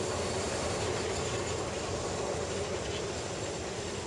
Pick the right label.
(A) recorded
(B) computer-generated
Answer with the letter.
A